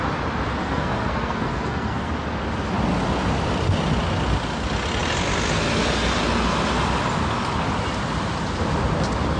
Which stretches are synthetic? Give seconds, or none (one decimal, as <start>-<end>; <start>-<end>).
0.6-2.1